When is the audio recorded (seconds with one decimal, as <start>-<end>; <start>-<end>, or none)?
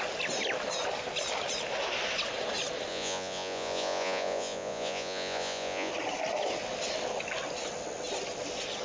0.0-2.9; 5.9-8.8